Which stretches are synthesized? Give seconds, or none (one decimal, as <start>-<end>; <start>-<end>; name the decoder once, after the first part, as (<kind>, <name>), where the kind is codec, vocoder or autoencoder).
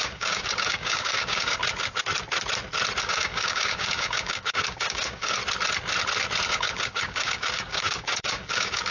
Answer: 0.0-1.6 (codec, DAC); 3.0-5.4; 6.5-8.9